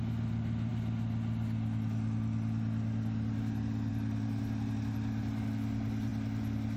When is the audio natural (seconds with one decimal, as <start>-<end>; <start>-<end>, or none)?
0.0-6.8